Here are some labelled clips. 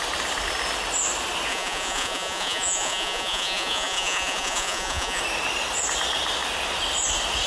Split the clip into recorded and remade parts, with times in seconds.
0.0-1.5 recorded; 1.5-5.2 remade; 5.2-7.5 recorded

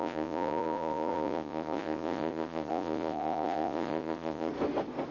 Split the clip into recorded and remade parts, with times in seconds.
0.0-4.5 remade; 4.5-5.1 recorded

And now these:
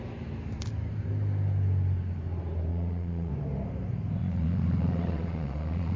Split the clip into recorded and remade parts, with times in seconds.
0.0-2.7 recorded; 2.7-3.3 remade; 3.3-4.2 recorded; 4.2-6.0 remade

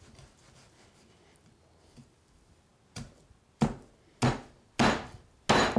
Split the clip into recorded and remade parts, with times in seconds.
0.0-5.8 recorded